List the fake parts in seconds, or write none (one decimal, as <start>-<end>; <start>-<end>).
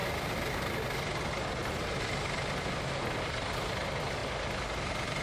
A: 0.0-4.2; 4.8-5.2